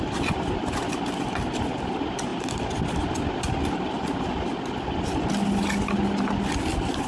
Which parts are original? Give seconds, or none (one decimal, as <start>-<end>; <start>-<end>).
0.0-7.1

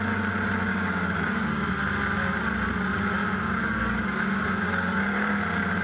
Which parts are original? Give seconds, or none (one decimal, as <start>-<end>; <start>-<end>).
0.0-0.7; 1.7-3.2; 5.3-5.8

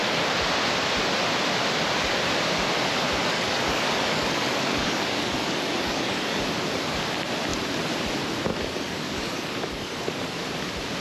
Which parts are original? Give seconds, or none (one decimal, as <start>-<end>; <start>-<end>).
0.0-3.2; 6.4-8.5; 10.3-11.0